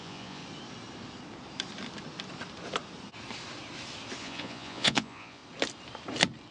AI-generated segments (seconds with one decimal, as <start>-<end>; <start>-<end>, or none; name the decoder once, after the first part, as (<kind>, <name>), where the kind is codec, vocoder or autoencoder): 0.0-0.4 (vocoder, Vocos); 4.2-5.4

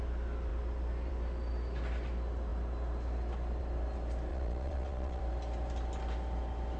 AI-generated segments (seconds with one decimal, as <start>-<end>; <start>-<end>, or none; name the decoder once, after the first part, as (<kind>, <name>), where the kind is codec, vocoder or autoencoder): 4.3-5.2 (vocoder, Vocos)

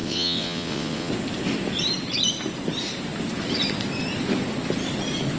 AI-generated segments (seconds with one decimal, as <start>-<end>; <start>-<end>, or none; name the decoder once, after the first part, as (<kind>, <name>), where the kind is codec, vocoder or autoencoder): 0.0-1.1 (vocoder, WaveNeXt)

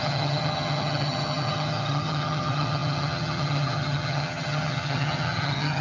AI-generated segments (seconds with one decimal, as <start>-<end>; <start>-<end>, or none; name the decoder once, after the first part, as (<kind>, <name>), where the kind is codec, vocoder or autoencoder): 0.0-5.8 (vocoder, HiFi-GAN)

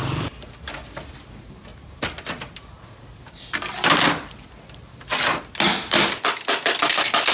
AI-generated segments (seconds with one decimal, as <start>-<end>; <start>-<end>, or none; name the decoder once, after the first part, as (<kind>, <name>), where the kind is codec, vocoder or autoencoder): none